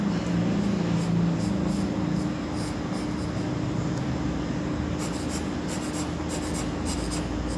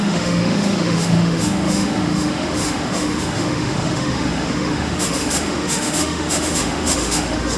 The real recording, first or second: first